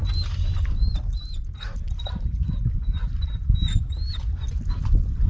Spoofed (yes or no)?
no